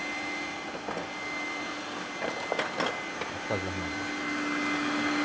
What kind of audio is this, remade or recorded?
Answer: recorded